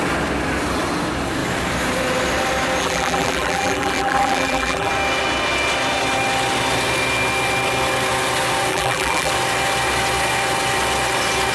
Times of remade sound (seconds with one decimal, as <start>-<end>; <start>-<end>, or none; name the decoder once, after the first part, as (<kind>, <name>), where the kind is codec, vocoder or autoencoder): 2.8-4.9 (vocoder, BigVGAN v2); 8.7-9.3